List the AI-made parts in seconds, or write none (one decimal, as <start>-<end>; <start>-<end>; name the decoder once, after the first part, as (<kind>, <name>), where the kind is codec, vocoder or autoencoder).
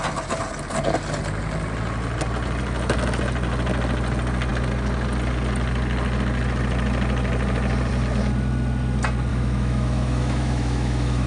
9.3-11.3 (autoencoder, DAC-VAE)